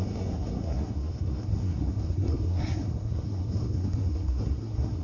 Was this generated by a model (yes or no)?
yes